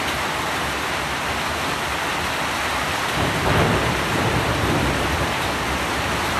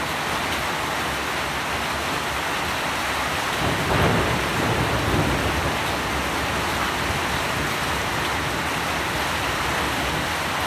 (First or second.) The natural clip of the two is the second